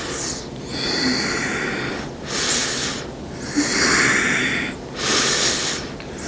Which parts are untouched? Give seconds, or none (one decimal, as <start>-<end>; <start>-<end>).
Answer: 0.0-6.3